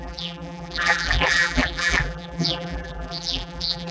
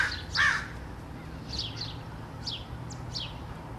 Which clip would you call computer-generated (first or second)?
first